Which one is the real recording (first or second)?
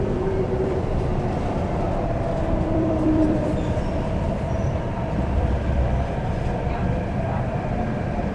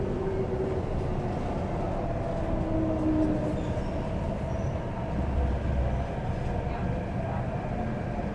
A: second